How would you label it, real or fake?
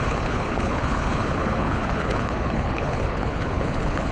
fake